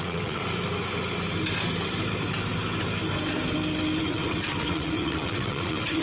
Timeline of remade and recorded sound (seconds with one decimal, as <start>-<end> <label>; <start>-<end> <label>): 0.0-0.4 remade; 0.4-4.0 recorded; 4.0-6.0 remade